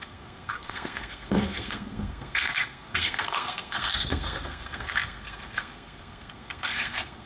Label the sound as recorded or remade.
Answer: remade